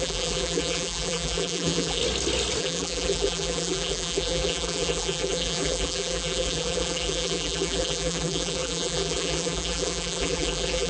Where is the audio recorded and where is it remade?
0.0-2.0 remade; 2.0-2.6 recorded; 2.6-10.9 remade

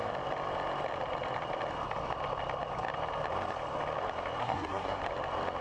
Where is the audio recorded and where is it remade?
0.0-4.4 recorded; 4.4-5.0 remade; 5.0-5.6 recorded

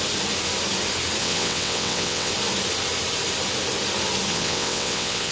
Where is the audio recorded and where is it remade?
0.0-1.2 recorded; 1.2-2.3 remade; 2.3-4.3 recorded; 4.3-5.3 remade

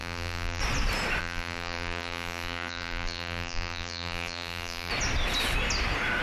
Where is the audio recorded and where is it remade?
0.0-0.6 remade; 0.6-1.2 recorded; 1.2-4.9 remade; 4.9-6.2 recorded